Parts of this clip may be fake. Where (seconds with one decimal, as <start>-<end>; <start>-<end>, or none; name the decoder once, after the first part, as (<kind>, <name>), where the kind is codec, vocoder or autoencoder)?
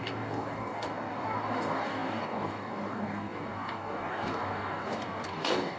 0.0-5.8 (codec, DAC)